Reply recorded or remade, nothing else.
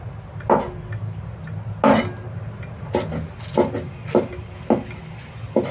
recorded